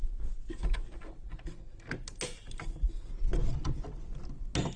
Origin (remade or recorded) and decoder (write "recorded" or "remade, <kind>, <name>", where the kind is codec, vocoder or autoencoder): recorded